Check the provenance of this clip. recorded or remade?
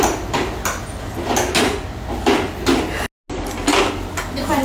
recorded